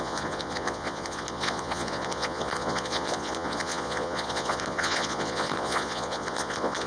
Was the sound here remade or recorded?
remade